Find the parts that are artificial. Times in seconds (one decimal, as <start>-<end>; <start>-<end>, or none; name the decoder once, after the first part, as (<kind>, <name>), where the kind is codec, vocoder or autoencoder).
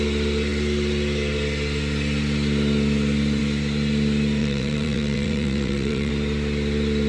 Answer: 4.4-6.1 (vocoder, WaveNeXt)